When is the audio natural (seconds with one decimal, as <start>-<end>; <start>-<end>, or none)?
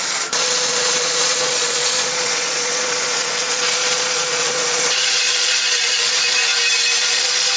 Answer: 6.4-7.0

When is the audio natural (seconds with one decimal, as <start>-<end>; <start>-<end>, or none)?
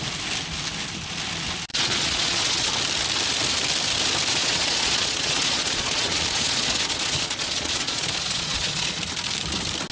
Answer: 0.0-1.7; 2.7-4.3; 9.0-9.9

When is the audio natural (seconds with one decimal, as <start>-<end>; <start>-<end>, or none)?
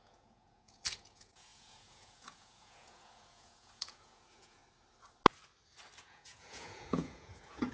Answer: 4.6-6.0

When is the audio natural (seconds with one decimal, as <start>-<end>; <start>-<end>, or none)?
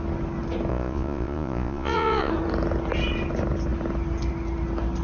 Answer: 0.0-0.7; 2.3-5.0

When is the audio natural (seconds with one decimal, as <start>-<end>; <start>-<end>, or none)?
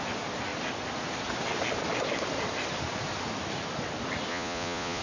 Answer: 0.0-4.3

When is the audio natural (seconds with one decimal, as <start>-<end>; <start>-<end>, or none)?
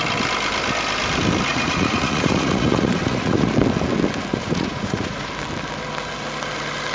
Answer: 0.0-1.5; 3.5-4.4; 5.3-6.9